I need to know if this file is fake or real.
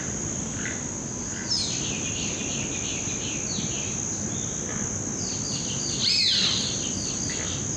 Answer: real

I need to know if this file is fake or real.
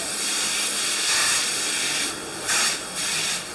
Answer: real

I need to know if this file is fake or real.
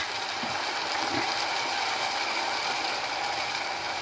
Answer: fake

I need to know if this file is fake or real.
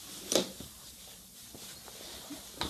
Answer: real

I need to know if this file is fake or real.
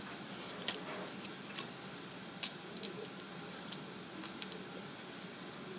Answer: fake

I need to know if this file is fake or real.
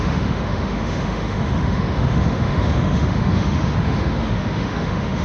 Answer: fake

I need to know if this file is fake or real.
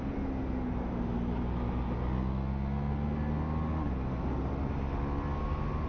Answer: real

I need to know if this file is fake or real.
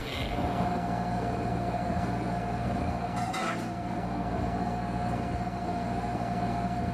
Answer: fake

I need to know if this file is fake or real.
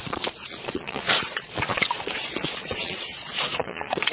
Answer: fake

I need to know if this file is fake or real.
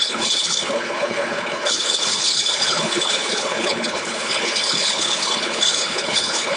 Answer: fake